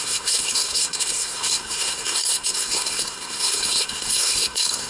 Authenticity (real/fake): fake